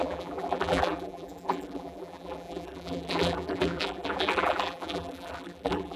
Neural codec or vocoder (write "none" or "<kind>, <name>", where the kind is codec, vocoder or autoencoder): vocoder, BigVGAN v2